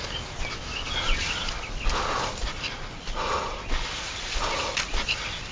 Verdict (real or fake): real